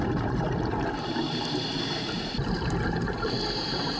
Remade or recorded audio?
remade